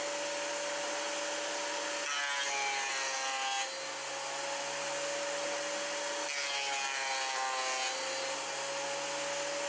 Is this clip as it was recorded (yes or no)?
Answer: yes